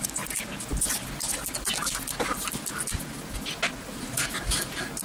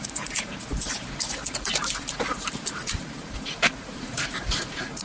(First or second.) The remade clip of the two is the second